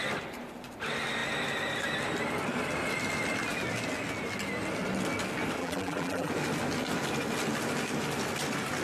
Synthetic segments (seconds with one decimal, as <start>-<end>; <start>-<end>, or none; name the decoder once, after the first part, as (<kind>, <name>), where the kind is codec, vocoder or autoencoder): 5.6-6.3 (vocoder, BigVGAN v2)